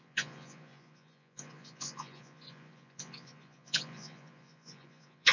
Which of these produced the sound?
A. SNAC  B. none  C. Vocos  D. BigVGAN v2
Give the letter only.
C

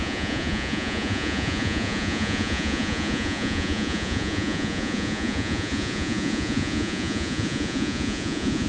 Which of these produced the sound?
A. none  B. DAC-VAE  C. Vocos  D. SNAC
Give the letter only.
C